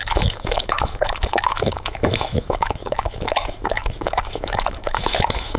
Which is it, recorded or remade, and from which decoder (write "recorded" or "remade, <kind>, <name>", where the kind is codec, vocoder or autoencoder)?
remade, autoencoder, DAC-VAE